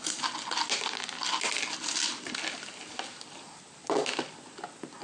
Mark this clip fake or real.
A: real